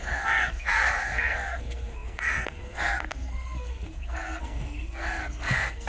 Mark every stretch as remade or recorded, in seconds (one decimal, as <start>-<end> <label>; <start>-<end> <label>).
0.0-5.9 remade